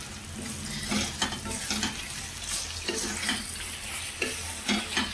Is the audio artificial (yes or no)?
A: no